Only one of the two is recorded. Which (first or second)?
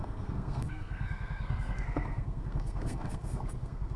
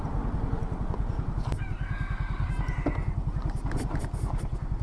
second